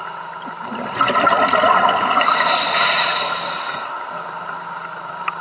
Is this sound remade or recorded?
recorded